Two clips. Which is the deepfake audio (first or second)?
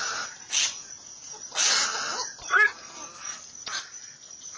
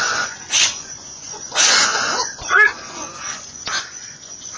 second